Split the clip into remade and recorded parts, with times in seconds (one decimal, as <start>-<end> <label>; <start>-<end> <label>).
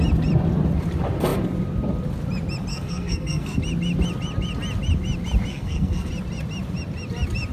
0.0-2.7 recorded; 2.7-3.6 remade; 3.6-5.5 recorded; 5.5-6.1 remade; 6.1-7.5 recorded